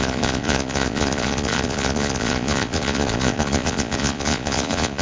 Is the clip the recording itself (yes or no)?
no